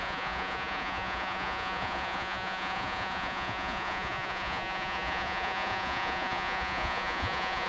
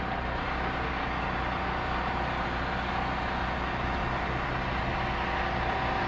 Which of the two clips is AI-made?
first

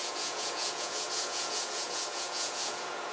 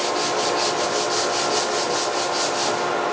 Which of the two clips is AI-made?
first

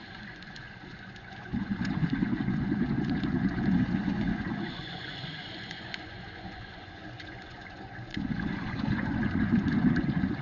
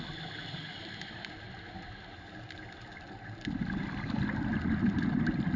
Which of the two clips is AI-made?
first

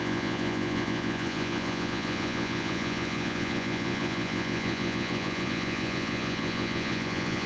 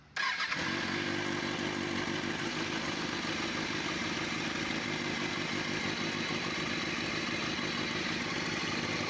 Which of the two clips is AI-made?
first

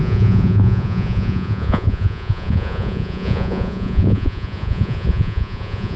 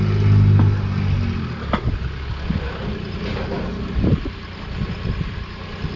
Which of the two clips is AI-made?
first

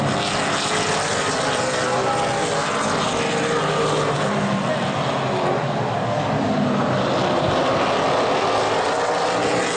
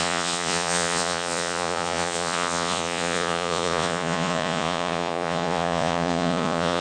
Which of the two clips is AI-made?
second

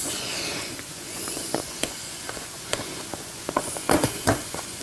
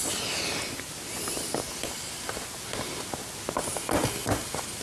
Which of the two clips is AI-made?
first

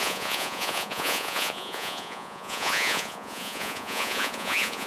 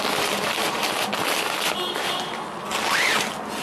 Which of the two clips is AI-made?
first